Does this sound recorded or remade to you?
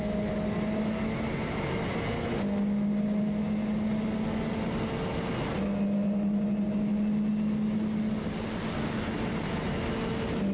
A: recorded